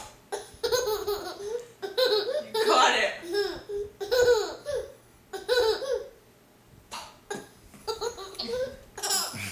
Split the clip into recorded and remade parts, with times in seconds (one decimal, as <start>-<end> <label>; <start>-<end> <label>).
0.0-4.6 recorded; 4.6-5.2 remade; 5.2-7.8 recorded; 7.8-8.4 remade; 8.4-9.5 recorded